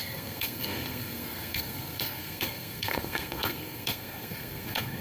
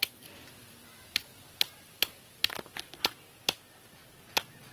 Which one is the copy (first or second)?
first